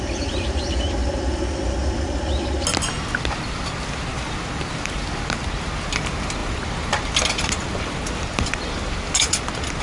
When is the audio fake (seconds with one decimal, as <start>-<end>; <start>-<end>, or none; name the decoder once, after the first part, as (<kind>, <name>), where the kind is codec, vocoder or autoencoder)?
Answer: 4.1-5.0 (vocoder, BigVGAN v2); 6.4-9.2